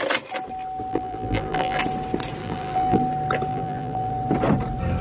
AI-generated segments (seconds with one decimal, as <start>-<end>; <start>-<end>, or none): 0.9-1.8; 2.4-3.0; 3.5-4.1